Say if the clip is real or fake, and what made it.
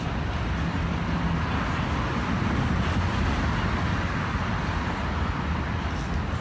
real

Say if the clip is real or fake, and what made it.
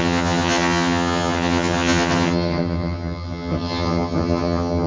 fake, vocoder, HiFi-GAN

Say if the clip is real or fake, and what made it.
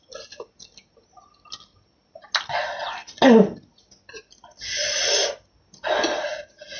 real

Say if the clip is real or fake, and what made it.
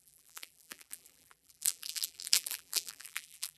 fake, vocoder, BigVGAN v2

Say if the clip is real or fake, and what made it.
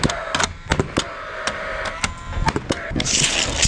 real